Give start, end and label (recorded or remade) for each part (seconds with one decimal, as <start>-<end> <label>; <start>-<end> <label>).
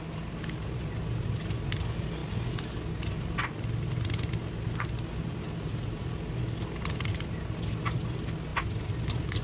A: 0.0-9.4 recorded